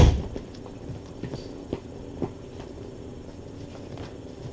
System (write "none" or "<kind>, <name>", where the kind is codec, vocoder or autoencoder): none